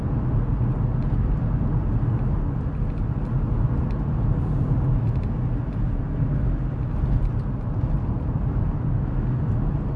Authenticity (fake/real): real